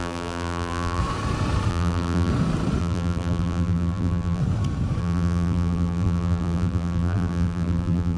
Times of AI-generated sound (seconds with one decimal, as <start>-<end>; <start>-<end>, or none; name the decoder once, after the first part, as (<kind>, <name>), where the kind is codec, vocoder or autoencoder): 0.0-1.0 (vocoder, BigVGAN v2); 1.7-2.3; 2.8-4.4; 5.0-8.2